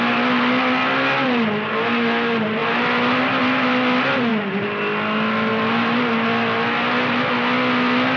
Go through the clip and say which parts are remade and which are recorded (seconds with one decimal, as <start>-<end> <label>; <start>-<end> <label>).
0.0-8.2 recorded